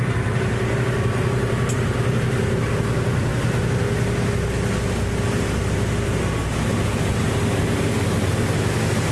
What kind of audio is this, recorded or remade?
recorded